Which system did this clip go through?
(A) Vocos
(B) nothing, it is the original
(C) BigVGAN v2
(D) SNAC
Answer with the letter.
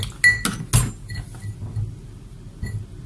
B